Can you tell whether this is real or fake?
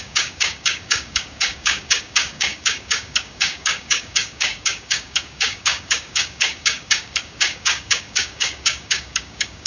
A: fake